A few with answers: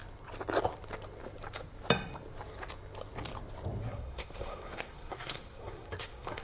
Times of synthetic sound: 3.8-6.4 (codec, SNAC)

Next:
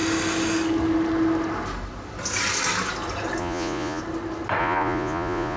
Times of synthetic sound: 3.4-4.0 (vocoder, Vocos); 4.6-5.6

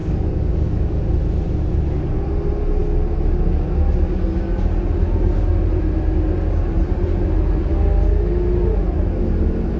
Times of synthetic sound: 0.0-1.0 (codec, DAC)

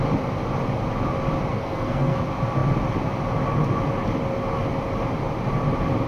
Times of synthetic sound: 1.5-2.2 (codec, SNAC)

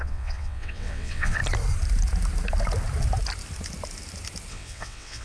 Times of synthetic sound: 0.0-1.4 (vocoder, WaveNeXt); 4.5-5.2